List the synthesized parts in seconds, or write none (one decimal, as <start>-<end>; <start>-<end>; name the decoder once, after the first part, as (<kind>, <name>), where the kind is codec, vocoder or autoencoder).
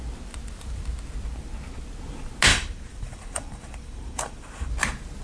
2.5-4.7 (vocoder, BigVGAN v2)